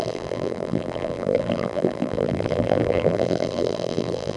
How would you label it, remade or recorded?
remade